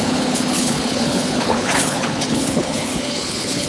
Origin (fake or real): fake